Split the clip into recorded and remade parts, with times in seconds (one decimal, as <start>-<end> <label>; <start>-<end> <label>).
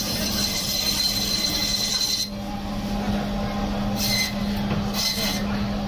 0.0-1.5 remade; 1.5-5.9 recorded